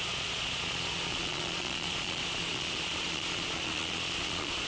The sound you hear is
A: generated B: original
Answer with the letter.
A